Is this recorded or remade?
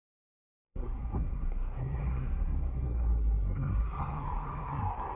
remade